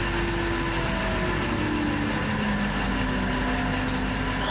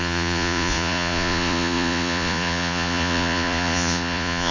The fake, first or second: second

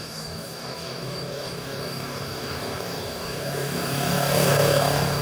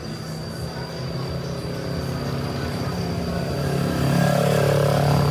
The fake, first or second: first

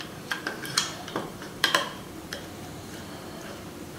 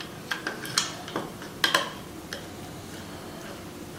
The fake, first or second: first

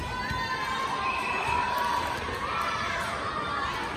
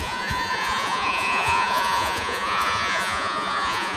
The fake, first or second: second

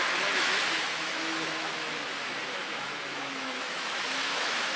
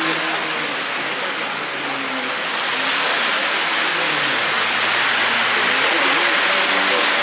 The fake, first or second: first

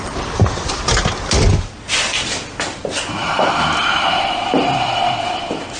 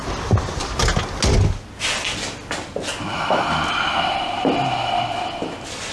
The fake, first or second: first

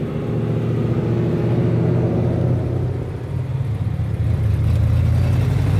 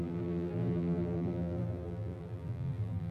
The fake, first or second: second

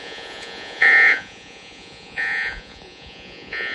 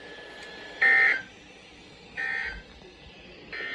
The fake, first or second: first